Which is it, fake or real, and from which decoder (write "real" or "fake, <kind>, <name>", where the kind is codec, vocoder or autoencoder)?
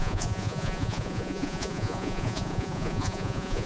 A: fake, vocoder, Vocos